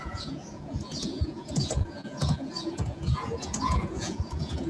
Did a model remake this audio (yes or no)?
yes